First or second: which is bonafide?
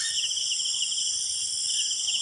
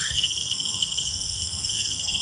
first